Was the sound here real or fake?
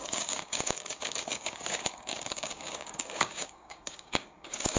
fake